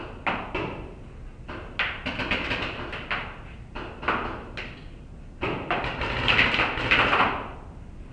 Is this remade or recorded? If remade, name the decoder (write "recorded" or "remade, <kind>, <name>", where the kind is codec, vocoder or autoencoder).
recorded